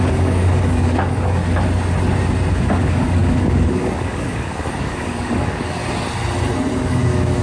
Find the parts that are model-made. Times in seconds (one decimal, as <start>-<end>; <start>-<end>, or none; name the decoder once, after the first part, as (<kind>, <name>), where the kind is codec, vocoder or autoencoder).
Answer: 0.0-1.4 (codec, DAC); 2.5-5.8; 6.8-7.4